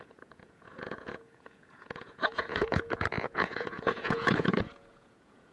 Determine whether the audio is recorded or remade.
remade